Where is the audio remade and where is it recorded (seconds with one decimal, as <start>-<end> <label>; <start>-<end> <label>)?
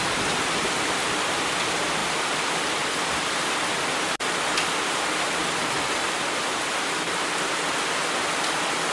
0.0-8.9 recorded